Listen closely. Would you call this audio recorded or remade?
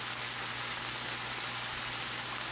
recorded